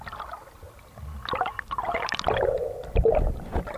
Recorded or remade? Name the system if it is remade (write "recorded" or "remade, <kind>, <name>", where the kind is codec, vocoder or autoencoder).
recorded